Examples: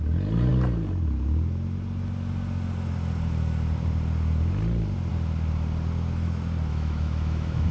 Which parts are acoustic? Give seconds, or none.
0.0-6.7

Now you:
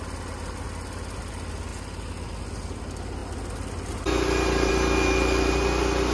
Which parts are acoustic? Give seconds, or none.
0.0-6.1

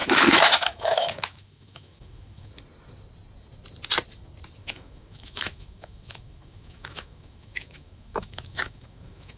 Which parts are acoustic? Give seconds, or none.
2.5-4.6

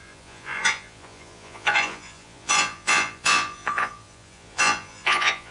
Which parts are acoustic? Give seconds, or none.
none

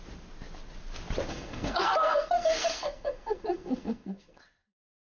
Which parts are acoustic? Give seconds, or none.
0.0-1.3; 4.4-5.1

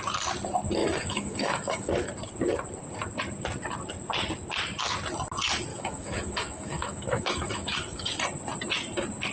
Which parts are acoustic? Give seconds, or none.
0.0-0.8; 1.9-5.7; 8.2-9.3

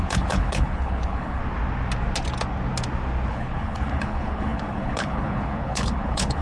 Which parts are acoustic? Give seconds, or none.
1.4-3.3